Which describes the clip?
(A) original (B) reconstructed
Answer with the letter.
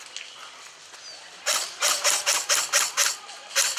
A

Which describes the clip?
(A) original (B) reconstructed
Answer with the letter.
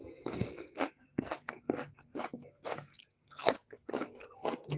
B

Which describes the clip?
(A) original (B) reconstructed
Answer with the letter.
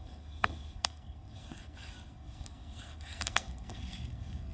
B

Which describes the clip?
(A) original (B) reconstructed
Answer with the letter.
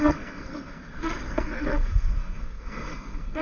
B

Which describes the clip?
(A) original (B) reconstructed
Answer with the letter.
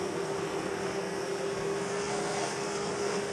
B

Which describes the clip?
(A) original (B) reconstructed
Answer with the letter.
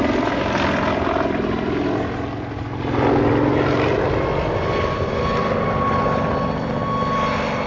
A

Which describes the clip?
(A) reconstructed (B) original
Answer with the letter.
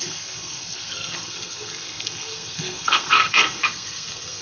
A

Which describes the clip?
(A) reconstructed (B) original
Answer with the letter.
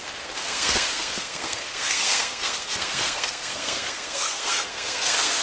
A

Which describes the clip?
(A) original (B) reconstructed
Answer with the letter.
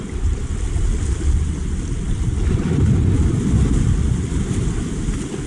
A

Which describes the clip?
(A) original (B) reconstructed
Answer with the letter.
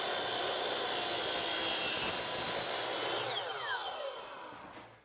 A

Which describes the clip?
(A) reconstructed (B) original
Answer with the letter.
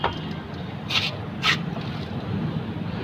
B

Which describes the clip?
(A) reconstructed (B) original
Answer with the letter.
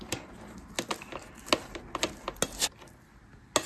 B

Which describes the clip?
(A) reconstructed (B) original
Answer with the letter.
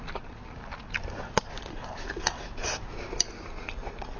B